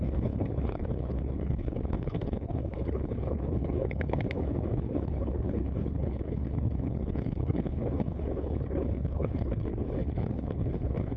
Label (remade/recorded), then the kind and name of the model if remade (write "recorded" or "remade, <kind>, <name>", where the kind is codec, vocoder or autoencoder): remade, codec, HILCodec